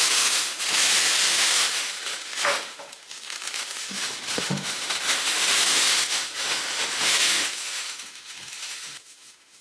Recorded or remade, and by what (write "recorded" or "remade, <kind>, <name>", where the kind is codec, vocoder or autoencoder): remade, autoencoder, DAC-VAE